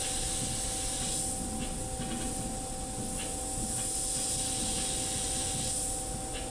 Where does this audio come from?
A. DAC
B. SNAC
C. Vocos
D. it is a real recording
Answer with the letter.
D